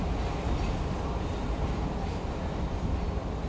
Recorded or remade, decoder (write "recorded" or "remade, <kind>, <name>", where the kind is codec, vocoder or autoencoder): recorded